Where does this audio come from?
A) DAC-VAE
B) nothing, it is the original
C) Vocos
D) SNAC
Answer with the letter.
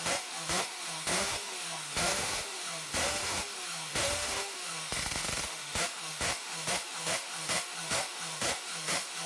A